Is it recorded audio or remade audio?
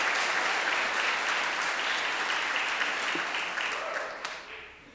recorded